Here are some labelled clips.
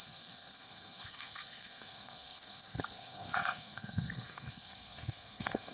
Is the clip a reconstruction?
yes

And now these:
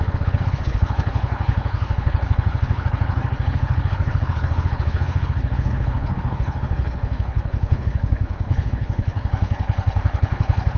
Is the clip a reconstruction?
yes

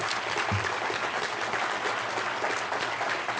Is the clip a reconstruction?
no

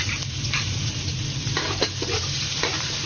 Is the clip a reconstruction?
yes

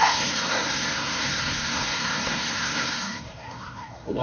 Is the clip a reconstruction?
yes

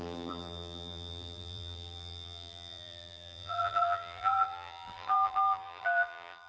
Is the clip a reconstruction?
yes